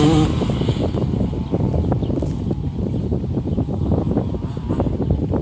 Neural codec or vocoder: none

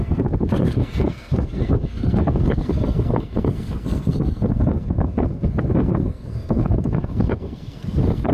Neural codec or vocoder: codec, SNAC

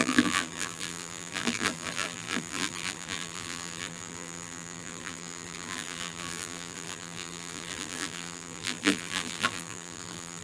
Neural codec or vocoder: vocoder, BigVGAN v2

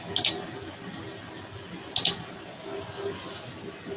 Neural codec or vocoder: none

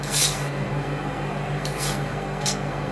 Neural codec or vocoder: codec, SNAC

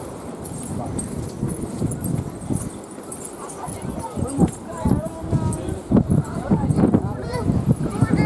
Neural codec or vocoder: none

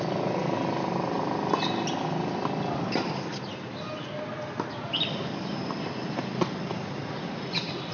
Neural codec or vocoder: none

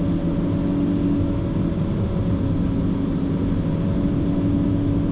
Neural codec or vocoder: none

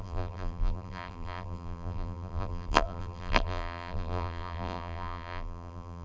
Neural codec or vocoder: vocoder, BigVGAN v2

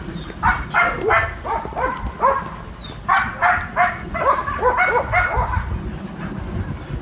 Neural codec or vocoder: none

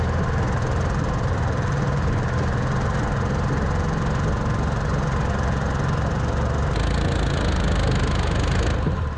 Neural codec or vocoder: none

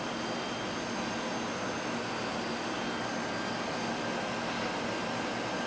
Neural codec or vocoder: none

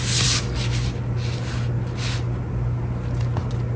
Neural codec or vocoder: none